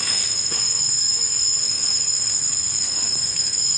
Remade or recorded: remade